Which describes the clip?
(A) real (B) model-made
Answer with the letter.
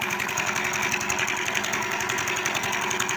B